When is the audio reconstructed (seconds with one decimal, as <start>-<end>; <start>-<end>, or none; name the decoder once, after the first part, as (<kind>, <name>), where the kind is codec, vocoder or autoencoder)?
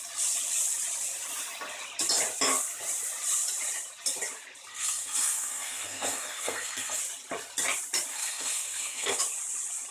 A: 4.7-7.0 (codec, SNAC); 8.1-9.2